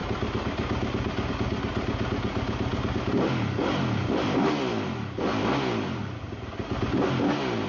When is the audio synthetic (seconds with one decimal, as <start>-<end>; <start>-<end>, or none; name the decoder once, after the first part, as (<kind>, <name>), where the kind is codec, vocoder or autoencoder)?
none

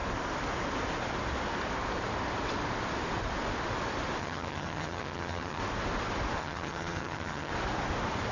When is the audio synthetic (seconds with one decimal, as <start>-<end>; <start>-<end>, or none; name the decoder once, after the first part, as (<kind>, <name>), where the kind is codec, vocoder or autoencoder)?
4.2-5.6 (vocoder, HiFi-GAN); 6.4-7.5

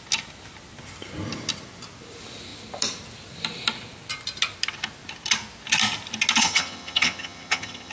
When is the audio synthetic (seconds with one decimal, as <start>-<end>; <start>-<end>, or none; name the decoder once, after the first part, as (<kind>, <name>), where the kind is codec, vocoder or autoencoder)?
6.4-7.9 (vocoder, HiFi-GAN)

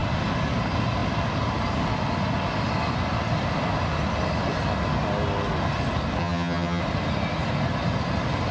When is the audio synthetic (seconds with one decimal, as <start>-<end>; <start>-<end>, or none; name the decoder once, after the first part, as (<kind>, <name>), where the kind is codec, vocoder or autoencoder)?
6.2-6.8 (vocoder, HiFi-GAN)

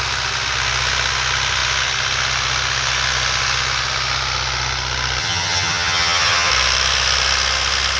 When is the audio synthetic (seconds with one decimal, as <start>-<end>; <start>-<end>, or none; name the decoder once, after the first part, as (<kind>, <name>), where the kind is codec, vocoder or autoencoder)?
5.2-6.5 (vocoder, HiFi-GAN)